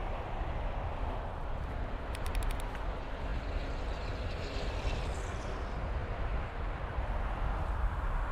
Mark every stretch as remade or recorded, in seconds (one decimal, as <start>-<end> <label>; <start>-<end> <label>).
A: 0.0-8.3 recorded